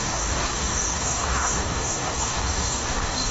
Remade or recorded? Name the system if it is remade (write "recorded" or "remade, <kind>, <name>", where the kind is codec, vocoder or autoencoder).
remade, codec, DAC